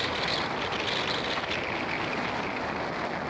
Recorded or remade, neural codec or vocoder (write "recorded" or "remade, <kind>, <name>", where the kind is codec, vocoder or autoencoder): recorded